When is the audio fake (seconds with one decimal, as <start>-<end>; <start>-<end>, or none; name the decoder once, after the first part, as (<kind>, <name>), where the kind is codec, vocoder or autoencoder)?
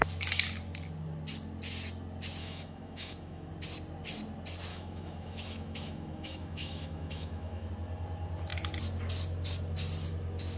2.4-3.5 (autoencoder, DAC-VAE); 4.7-7.7